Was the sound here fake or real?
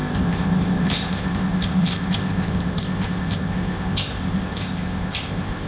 fake